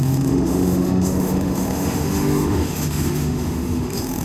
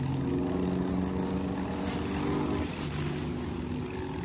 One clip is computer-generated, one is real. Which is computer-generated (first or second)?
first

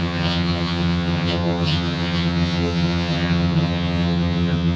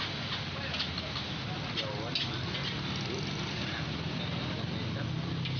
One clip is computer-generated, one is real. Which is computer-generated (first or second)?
first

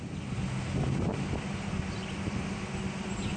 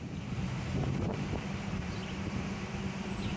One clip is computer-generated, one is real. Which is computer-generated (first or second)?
second